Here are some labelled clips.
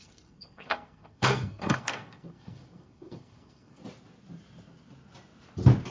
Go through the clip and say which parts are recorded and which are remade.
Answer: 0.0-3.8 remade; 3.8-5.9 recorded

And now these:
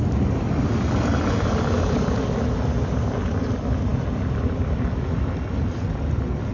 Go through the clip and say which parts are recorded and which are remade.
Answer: 0.0-6.5 recorded

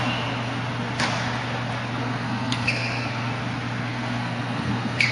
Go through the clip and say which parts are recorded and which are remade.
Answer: 0.0-2.0 recorded; 2.0-3.3 remade; 3.3-3.8 recorded; 3.8-5.1 remade

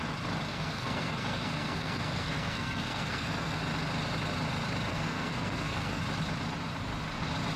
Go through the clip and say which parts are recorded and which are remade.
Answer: 0.0-0.5 recorded; 0.5-3.6 remade; 3.6-4.9 recorded; 4.9-6.0 remade; 6.0-7.6 recorded

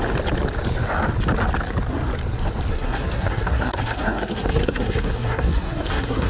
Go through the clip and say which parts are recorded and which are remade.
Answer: 0.0-2.7 recorded; 2.7-6.3 remade

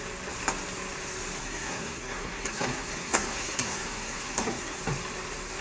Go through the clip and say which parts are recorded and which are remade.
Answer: 0.0-1.4 recorded; 1.4-4.8 remade; 4.8-5.6 recorded